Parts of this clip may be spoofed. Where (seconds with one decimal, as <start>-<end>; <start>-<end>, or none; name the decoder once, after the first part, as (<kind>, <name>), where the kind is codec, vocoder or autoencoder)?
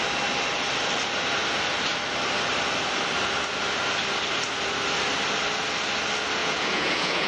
6.4-7.3 (vocoder, Vocos)